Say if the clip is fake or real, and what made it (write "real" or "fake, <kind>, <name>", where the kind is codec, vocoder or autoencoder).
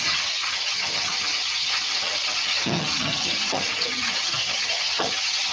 fake, vocoder, HiFi-GAN